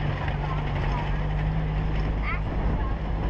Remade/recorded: recorded